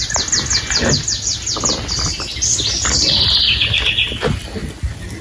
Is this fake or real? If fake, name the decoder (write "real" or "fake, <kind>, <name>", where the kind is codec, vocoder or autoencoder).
real